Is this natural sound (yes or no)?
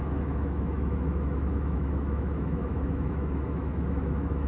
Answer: no